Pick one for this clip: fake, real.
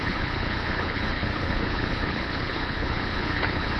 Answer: fake